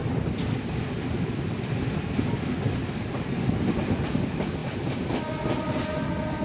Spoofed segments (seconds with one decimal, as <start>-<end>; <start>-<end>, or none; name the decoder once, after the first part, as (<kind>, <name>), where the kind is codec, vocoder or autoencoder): none

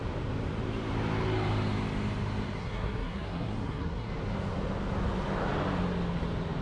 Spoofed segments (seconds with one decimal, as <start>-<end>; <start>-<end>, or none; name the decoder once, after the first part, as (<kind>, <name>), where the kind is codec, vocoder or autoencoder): 2.6-4.1 (codec, SNAC)

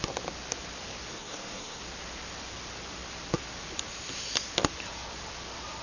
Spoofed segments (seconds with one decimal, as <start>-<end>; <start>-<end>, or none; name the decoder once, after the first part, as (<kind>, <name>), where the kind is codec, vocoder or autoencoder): 1.1-1.8 (codec, SNAC)

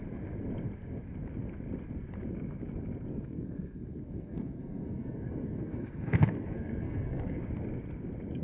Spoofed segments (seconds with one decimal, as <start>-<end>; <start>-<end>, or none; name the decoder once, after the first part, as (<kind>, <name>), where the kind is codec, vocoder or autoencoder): 3.1-7.4 (codec, SNAC)

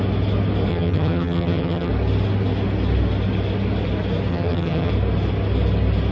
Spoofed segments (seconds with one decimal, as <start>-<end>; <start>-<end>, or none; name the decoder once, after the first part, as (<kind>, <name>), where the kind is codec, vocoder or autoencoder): 0.7-1.9 (vocoder, HiFi-GAN); 4.3-4.9

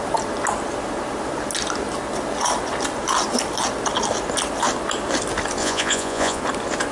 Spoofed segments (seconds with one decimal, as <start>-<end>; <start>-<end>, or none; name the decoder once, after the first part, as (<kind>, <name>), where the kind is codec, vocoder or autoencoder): 5.6-6.4 (vocoder, Vocos)